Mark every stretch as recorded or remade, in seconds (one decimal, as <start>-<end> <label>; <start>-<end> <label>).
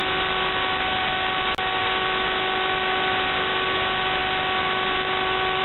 0.0-1.8 recorded; 1.8-4.2 remade; 4.2-5.6 recorded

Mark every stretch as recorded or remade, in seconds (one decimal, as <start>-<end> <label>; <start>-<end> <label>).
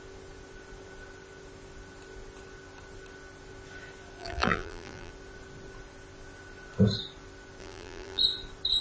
0.0-4.2 recorded; 4.2-5.1 remade; 5.1-7.6 recorded; 7.6-8.2 remade; 8.2-8.8 recorded